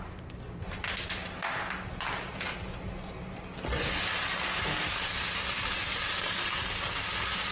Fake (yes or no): no